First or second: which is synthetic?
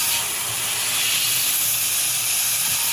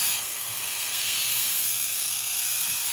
second